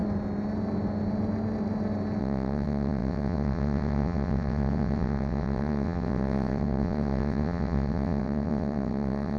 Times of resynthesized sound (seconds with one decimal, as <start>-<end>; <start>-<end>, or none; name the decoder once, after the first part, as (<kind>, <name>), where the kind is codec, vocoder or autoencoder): 2.2-9.4 (vocoder, WaveNeXt)